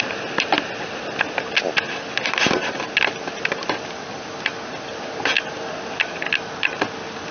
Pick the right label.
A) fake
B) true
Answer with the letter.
B